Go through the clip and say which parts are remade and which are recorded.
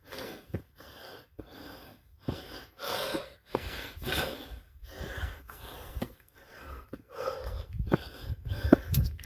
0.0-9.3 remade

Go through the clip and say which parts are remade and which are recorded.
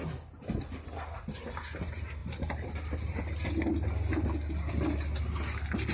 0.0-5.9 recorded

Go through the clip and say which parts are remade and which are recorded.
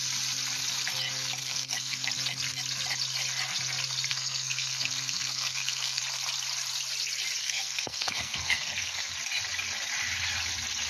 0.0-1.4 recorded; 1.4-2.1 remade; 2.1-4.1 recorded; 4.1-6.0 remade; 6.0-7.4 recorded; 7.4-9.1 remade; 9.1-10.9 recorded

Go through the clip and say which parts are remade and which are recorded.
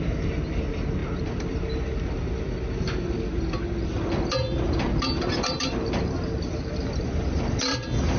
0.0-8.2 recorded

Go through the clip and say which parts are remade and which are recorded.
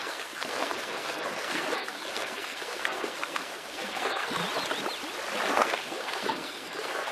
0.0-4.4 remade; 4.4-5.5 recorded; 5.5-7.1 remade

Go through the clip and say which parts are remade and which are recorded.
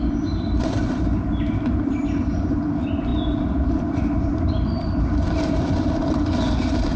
0.0-7.0 recorded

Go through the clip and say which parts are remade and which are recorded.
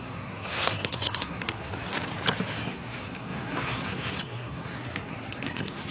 0.0-1.8 remade; 1.8-2.7 recorded; 2.7-5.9 remade